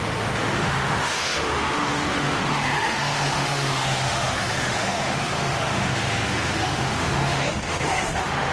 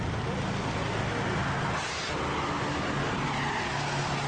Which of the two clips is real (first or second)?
second